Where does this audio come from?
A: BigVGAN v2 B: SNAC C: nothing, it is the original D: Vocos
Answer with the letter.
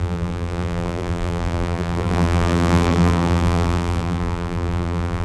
A